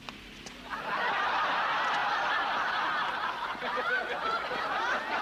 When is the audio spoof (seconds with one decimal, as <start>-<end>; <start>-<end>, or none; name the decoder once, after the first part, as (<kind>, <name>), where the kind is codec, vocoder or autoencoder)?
none